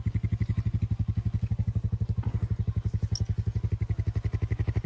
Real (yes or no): yes